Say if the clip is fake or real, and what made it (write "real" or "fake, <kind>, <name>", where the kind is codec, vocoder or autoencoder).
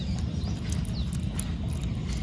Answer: real